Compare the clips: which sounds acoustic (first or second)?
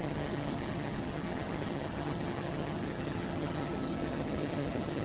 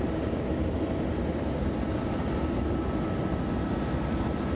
second